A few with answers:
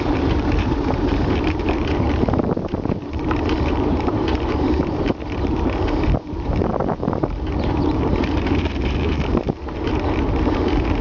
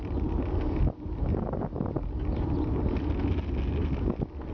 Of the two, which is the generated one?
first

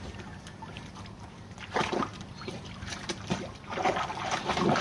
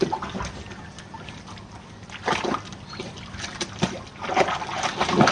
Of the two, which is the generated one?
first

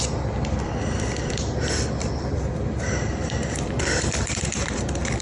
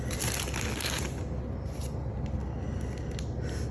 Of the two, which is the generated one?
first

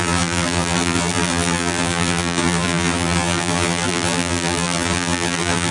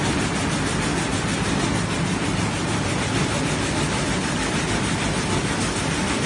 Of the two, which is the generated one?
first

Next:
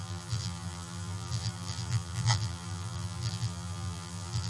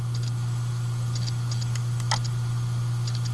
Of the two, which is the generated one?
first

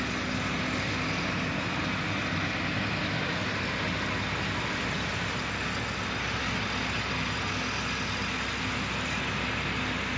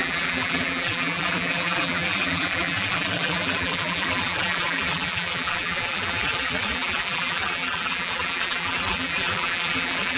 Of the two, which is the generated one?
second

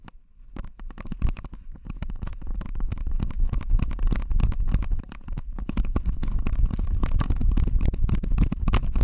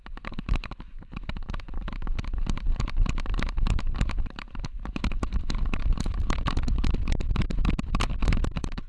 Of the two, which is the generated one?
second